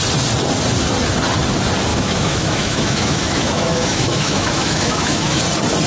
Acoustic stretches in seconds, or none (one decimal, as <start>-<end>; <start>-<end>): 0.0-1.9; 5.4-5.9

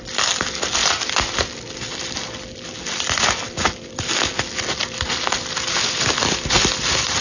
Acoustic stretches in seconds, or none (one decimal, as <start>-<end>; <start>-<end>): 0.0-7.2

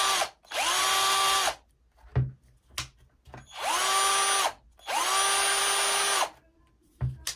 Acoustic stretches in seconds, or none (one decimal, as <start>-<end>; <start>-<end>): 0.0-7.4

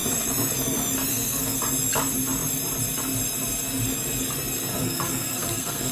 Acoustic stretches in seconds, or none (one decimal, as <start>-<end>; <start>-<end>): 0.0-1.1; 1.6-4.7

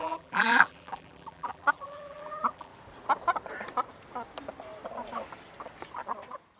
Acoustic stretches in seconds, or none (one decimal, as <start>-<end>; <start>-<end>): 2.7-6.6

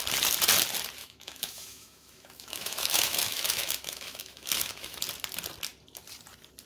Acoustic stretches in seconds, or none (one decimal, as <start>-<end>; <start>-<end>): 0.0-1.0; 5.0-6.7